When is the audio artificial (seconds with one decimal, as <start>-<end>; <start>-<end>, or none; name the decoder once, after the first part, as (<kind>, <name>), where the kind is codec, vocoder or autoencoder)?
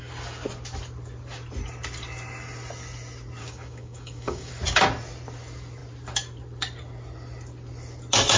3.4-4.5 (codec, DAC)